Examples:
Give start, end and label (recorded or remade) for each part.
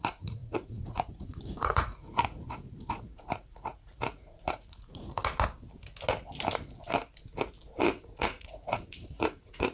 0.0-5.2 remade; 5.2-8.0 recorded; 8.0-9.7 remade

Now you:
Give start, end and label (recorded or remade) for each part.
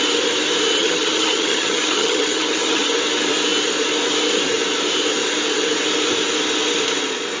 0.0-0.8 recorded; 0.8-2.9 remade; 2.9-7.4 recorded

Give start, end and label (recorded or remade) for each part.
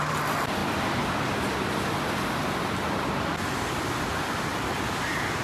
0.0-5.4 remade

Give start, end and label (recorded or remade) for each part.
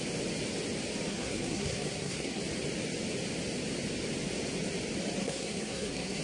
0.0-1.1 recorded; 1.1-2.4 remade; 2.4-5.2 recorded; 5.2-6.2 remade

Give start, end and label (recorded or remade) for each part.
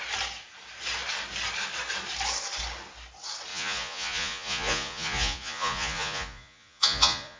0.0-3.5 recorded; 3.5-7.4 remade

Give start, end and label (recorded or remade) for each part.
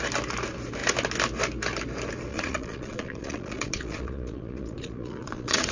0.0-2.3 recorded; 2.3-5.7 remade